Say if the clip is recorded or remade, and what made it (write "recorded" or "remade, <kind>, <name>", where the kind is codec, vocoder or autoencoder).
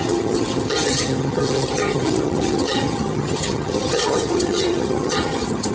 remade, vocoder, HiFi-GAN